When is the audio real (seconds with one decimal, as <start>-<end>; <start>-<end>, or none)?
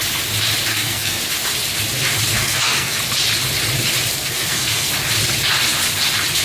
0.0-0.7; 1.2-2.3; 3.0-4.2; 4.9-6.4